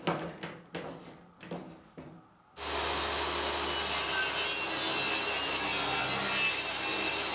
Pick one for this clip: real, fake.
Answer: real